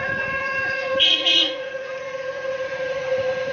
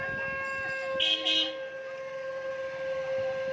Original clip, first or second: second